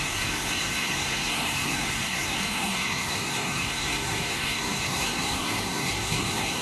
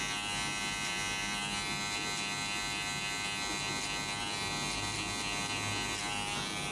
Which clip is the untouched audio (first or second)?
second